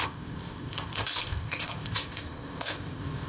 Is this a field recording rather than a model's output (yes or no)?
no